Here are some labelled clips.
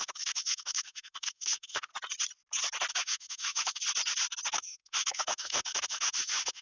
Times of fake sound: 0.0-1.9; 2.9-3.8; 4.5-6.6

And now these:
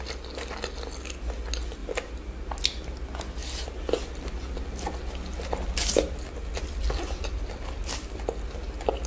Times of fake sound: 1.8-2.3

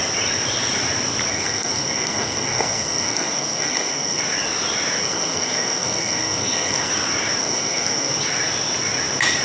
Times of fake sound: 1.3-4.2; 5.0-6.9; 7.4-8.1

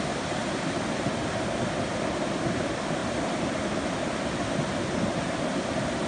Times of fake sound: 0.4-0.9